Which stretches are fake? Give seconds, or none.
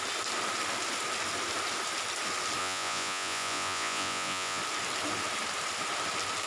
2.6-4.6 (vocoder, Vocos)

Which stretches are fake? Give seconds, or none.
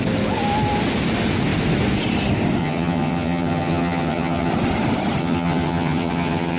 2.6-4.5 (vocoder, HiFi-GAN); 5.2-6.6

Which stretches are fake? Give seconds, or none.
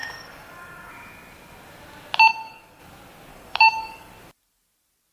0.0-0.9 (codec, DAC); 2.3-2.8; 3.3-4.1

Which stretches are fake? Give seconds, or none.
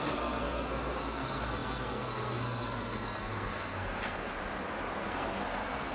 0.0-4.3 (codec, SNAC); 5.0-5.9